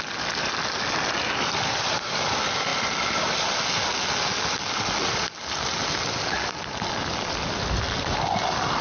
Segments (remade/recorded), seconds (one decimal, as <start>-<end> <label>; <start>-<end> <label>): 0.0-8.8 recorded